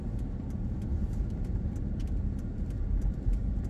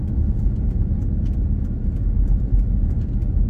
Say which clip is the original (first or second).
second